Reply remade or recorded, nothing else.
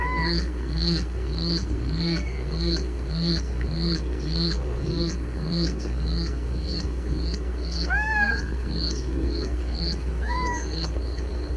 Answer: remade